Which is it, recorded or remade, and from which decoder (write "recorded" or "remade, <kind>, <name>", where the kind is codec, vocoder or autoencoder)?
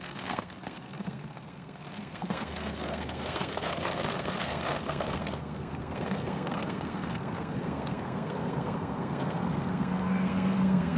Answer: remade, codec, SNAC